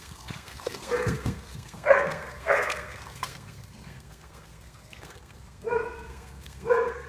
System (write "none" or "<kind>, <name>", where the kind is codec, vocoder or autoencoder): codec, SNAC